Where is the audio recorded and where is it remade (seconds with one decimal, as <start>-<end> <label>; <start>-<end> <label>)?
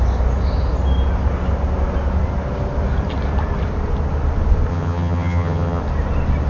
0.0-4.7 recorded; 4.7-5.8 remade; 5.8-6.5 recorded